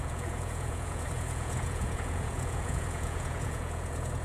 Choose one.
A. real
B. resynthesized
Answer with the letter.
B